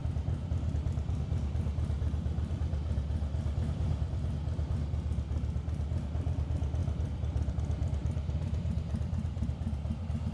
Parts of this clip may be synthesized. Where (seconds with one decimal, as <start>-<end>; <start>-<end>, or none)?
8.0-9.7